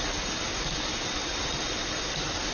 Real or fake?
real